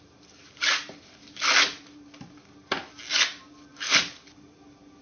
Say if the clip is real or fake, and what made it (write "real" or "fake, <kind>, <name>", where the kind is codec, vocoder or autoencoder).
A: real